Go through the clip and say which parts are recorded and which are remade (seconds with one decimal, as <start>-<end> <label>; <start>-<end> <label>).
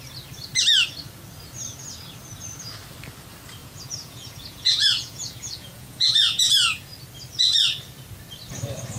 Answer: 0.0-3.6 recorded; 3.6-6.9 remade; 6.9-9.0 recorded